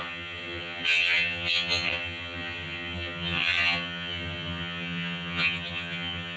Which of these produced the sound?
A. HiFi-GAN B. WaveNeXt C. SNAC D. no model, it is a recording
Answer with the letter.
A